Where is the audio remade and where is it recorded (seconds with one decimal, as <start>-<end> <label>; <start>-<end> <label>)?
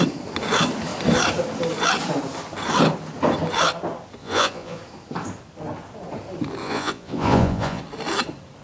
0.0-4.2 recorded; 4.2-4.8 remade; 4.8-6.6 recorded; 6.6-7.8 remade; 7.8-8.6 recorded